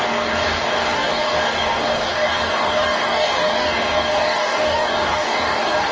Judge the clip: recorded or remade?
remade